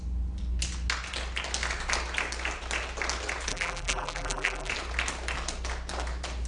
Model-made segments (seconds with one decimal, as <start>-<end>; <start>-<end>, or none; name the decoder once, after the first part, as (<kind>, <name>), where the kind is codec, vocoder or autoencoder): 3.5-4.7 (vocoder, BigVGAN v2)

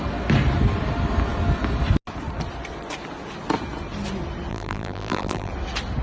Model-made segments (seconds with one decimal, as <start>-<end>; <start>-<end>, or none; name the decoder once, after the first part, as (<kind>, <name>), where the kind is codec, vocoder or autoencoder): 4.5-5.5 (vocoder, BigVGAN v2)

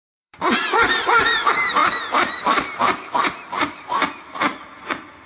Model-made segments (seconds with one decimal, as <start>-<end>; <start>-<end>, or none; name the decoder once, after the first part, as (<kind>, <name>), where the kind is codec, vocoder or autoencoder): 0.0-5.3 (vocoder, BigVGAN v2)

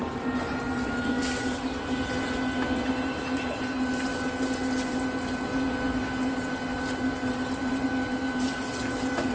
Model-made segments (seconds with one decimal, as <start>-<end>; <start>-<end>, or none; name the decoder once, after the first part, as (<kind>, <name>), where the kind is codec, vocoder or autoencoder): none

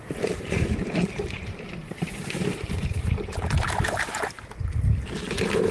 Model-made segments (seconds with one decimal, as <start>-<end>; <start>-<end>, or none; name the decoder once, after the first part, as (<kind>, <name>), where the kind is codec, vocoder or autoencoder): 0.0-5.7 (vocoder, BigVGAN v2)

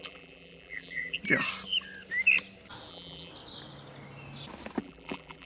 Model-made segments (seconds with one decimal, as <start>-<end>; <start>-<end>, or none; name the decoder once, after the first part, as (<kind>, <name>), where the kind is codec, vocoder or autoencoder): 0.0-1.2 (vocoder, BigVGAN v2); 2.9-3.3; 4.8-5.5

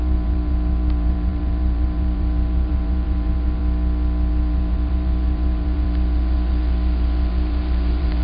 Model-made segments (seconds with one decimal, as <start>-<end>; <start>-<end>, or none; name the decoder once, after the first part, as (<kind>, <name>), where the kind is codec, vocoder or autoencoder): 0.0-3.6 (vocoder, BigVGAN v2); 4.3-8.2

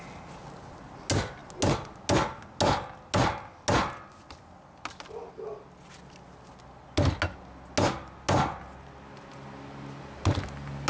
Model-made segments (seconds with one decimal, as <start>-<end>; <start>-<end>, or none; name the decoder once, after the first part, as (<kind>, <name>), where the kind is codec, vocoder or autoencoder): none